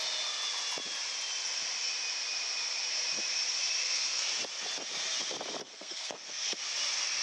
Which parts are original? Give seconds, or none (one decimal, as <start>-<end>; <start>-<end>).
0.0-3.8; 4.3-5.6; 6.6-7.2